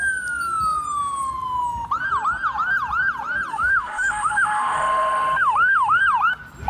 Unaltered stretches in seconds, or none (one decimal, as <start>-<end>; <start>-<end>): 0.0-3.5; 6.0-6.7